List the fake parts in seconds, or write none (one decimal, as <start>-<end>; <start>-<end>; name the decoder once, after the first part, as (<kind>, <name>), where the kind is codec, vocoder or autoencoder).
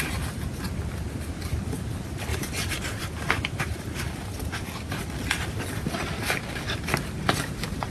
2.3-4.0 (vocoder, BigVGAN v2)